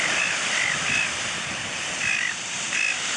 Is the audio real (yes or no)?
no